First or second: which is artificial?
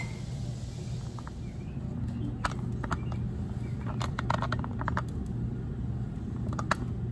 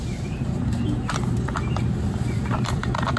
second